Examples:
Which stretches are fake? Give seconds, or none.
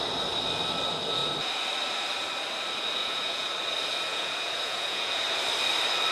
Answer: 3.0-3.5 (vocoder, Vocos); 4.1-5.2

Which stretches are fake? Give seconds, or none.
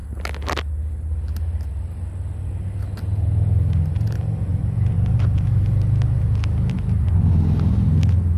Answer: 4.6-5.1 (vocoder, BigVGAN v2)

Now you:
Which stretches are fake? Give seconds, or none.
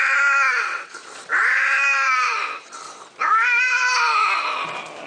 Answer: 0.7-3.1 (vocoder, BigVGAN v2)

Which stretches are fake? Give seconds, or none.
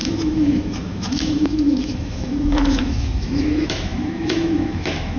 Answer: 0.0-5.2 (autoencoder, DAC-VAE)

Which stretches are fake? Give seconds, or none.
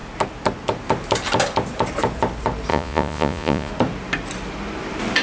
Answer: 2.7-3.7 (vocoder, Vocos)